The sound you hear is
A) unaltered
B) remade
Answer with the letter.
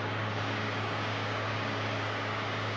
B